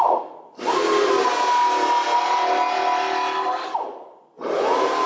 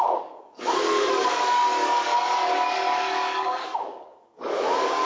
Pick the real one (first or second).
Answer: first